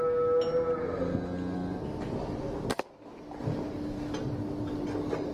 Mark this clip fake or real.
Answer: real